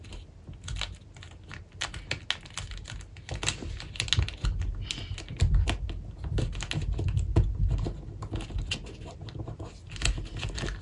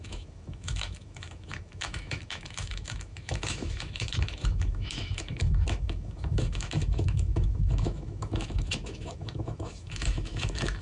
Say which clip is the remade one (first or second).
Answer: second